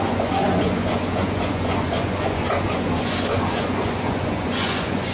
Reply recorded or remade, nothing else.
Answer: remade